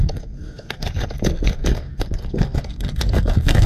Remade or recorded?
remade